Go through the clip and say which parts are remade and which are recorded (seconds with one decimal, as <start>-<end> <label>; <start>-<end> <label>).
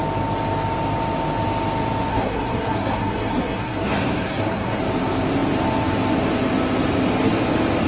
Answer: 0.0-2.1 recorded; 2.1-4.8 remade; 4.8-7.9 recorded